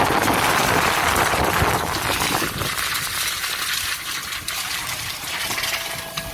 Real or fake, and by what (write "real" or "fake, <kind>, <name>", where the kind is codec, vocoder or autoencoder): real